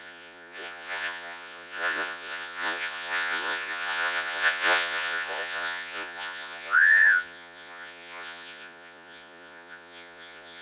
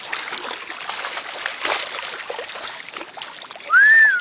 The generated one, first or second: first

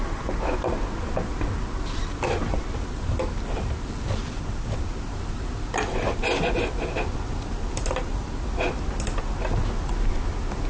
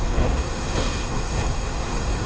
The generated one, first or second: second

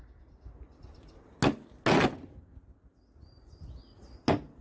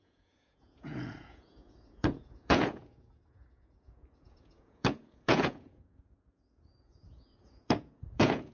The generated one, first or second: second